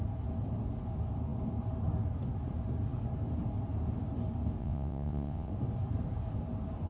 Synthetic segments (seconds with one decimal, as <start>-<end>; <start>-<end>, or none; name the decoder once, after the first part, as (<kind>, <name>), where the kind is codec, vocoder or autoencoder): 4.6-5.5 (vocoder, WaveNeXt)